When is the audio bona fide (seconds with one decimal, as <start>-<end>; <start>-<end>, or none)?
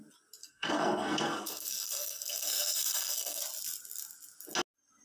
0.0-0.4; 3.4-5.0